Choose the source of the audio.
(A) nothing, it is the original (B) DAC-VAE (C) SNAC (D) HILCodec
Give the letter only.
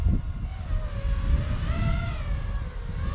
A